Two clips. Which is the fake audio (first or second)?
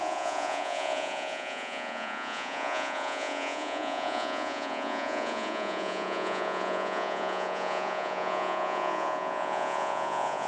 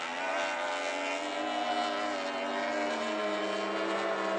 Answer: first